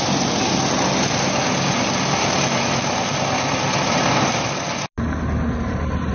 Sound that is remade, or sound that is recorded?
recorded